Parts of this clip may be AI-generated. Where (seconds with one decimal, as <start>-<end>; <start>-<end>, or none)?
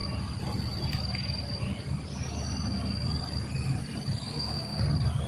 4.3-4.8